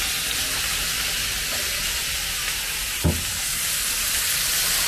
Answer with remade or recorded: recorded